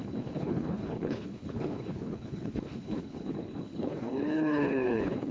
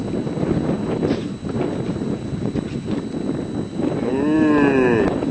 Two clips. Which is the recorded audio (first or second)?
second